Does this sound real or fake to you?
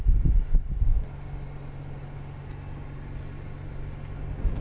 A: real